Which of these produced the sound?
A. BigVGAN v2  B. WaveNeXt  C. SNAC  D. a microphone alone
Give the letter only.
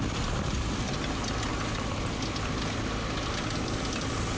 D